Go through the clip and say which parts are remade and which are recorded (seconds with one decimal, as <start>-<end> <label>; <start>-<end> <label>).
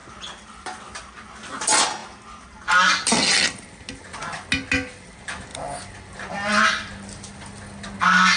0.0-8.4 recorded